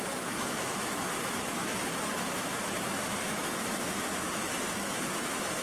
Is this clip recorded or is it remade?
remade